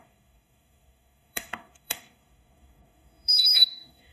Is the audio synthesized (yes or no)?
yes